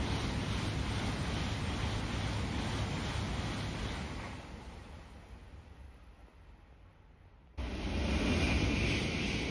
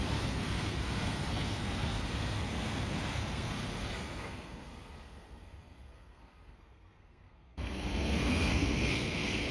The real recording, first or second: first